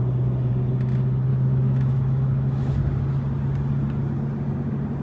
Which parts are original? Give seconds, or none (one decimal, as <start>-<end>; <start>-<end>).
0.0-1.3; 2.8-5.0

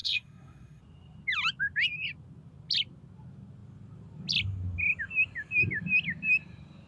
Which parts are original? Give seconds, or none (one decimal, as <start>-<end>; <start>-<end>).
0.8-6.9

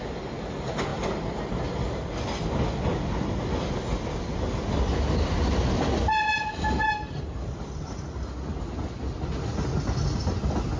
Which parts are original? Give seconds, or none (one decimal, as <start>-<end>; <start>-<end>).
0.0-10.8

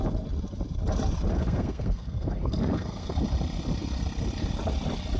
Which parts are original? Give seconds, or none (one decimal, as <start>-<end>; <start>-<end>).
0.0-1.3; 3.1-5.2